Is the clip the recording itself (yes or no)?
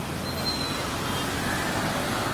yes